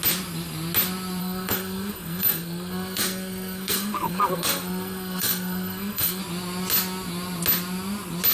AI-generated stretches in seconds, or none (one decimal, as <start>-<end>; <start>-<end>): 1.2-6.2